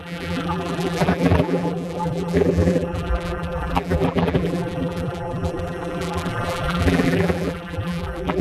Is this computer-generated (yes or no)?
yes